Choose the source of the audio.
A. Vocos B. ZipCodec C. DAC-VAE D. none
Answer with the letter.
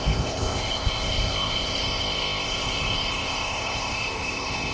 B